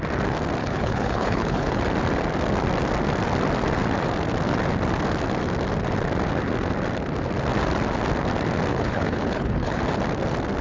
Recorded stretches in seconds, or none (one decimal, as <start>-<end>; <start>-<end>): 0.0-0.6; 1.8-8.7; 9.8-10.6